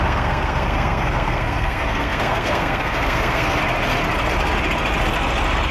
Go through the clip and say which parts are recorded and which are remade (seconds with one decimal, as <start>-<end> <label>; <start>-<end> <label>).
0.0-3.6 remade; 3.6-5.7 recorded